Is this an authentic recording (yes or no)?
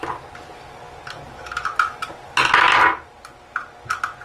yes